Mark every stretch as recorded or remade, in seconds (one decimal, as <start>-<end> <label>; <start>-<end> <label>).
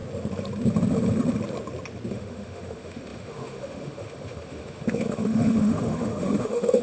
0.0-2.1 recorded; 2.1-6.8 remade